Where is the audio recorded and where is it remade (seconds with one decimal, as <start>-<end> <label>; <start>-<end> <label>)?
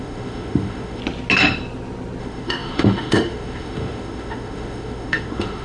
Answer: 0.0-1.0 remade; 1.0-2.2 recorded; 2.2-5.6 remade